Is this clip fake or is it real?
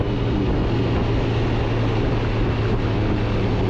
real